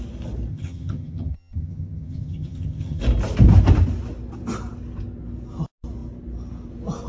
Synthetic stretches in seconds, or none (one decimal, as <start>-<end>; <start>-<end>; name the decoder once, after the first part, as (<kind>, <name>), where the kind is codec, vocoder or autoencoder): 0.5-3.0 (vocoder, HiFi-GAN)